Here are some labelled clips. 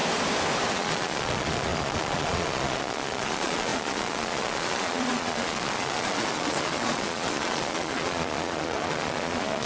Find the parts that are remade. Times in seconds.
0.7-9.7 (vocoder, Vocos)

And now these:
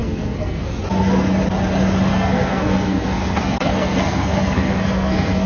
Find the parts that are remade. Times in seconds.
0.0-0.7 (codec, SNAC); 2.1-5.5

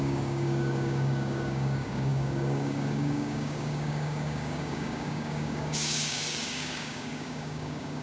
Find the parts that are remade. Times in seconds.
0.0-8.0 (codec, DAC)

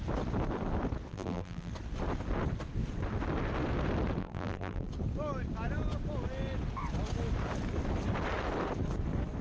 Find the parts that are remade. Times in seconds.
1.1-1.7 (vocoder, BigVGAN v2); 4.2-4.9

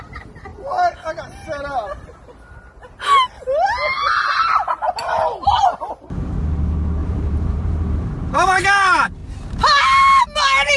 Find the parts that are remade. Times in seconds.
7.0-8.2 (vocoder, BigVGAN v2)

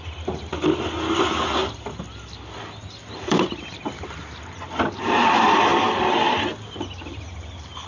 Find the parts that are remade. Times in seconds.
0.0-1.6 (vocoder, BigVGAN v2); 2.6-7.9

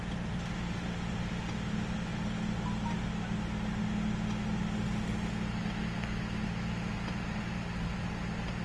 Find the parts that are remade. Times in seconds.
none